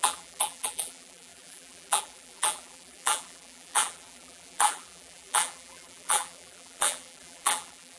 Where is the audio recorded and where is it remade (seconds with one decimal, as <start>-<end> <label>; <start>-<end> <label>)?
0.0-8.0 remade